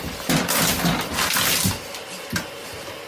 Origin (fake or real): real